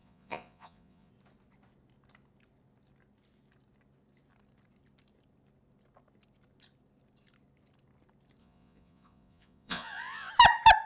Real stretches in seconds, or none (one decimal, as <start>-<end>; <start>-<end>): 1.1-8.4; 10.3-10.9